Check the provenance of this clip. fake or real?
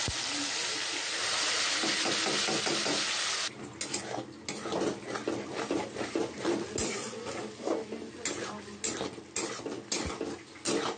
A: real